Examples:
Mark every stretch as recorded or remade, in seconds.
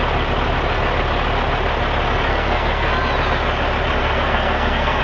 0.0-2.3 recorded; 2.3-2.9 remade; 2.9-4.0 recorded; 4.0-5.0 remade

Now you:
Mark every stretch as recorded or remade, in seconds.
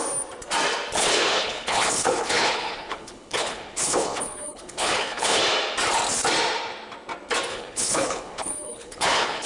0.0-1.0 recorded; 1.0-5.4 remade; 5.4-7.5 recorded; 7.5-9.5 remade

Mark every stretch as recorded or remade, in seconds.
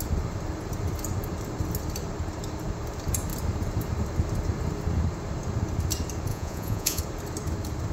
0.0-6.3 recorded; 6.3-7.0 remade; 7.0-7.9 recorded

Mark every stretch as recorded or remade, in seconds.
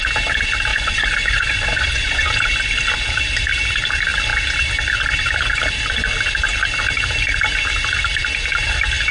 0.0-0.7 recorded; 0.7-2.3 remade; 2.3-9.1 recorded